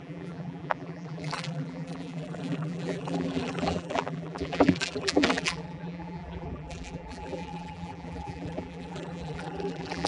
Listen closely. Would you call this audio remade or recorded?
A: remade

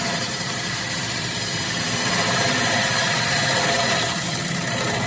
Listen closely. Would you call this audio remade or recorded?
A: remade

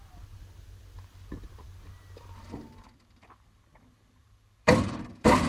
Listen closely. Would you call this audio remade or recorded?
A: remade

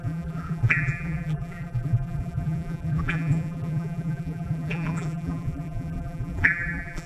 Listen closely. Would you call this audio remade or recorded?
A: remade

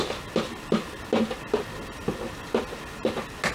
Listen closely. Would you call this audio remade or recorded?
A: recorded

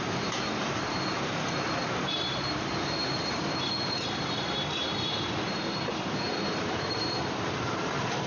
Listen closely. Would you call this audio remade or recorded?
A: remade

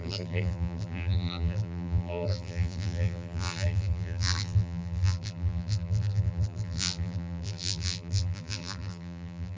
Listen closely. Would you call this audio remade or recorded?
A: remade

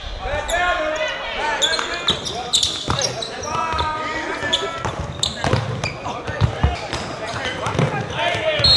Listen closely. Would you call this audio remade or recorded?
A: recorded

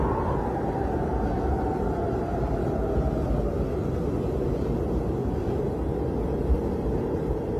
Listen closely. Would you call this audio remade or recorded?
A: recorded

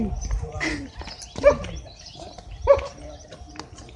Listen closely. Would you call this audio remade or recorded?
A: recorded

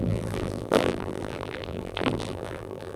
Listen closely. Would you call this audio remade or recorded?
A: remade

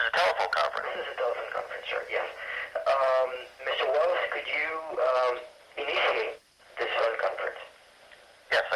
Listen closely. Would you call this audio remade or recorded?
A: recorded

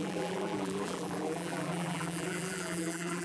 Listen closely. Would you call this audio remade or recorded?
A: remade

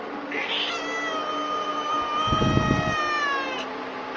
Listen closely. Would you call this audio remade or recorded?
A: recorded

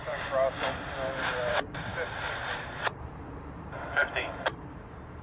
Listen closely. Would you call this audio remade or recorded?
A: remade